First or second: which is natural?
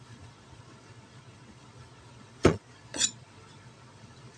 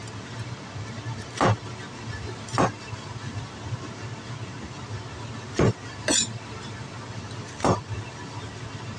second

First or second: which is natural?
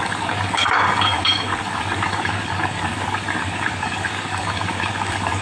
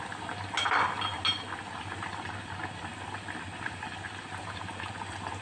second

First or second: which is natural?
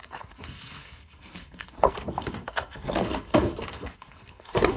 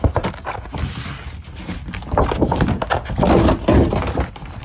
second